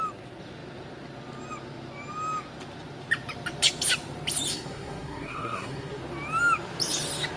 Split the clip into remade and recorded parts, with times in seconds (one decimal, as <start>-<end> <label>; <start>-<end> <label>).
0.0-4.5 recorded; 4.5-6.0 remade; 6.0-7.4 recorded